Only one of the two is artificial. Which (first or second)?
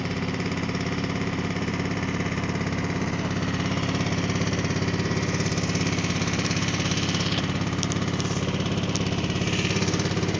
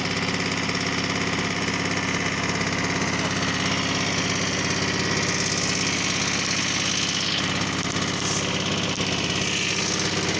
first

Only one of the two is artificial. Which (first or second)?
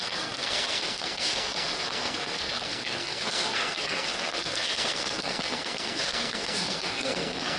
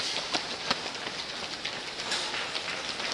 first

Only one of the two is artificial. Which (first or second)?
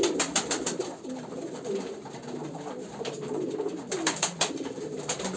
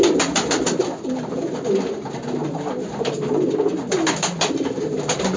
first